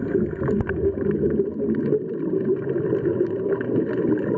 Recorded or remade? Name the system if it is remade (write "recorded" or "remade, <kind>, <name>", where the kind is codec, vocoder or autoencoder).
recorded